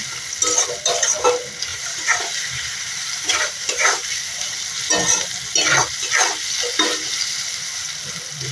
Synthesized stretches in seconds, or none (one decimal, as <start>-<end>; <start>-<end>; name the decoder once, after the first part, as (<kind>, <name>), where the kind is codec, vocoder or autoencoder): 1.7-4.1 (vocoder, BigVGAN v2)